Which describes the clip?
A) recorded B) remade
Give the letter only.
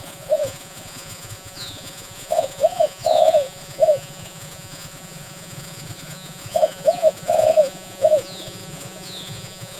B